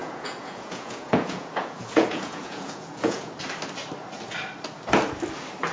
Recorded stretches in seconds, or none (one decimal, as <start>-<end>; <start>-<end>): 3.3-5.7